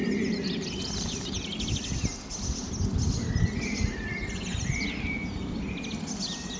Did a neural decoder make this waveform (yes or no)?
no